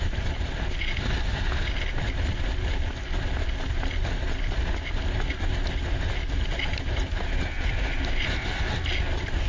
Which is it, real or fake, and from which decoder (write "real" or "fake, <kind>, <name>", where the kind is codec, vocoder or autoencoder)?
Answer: real